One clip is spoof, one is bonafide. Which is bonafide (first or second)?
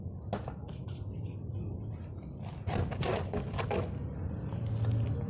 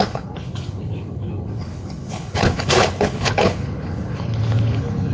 first